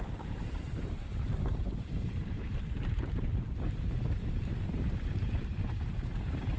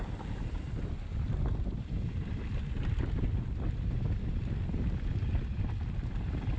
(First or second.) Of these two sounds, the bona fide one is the second